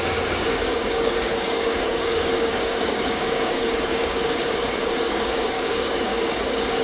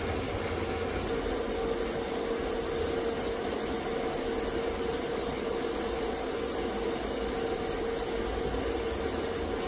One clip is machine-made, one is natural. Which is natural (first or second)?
second